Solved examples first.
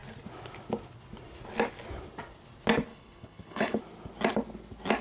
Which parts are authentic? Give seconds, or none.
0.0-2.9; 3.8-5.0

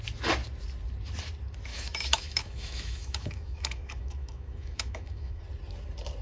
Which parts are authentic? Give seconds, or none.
0.0-1.7; 5.4-6.2

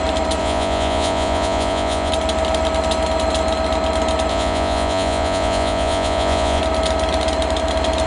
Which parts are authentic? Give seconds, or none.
0.0-0.4; 2.1-4.3; 6.6-8.1

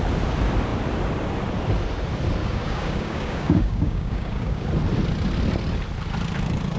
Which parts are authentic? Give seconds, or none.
0.0-2.4; 4.7-6.8

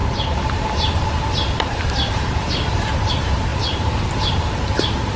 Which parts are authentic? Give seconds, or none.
3.1-3.5; 4.5-5.2

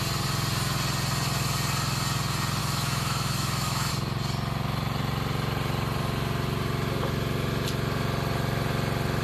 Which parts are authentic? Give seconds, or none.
0.0-2.6; 3.9-9.2